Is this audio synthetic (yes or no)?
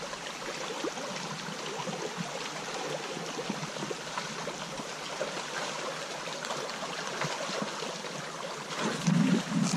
no